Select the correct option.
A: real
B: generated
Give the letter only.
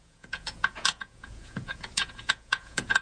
B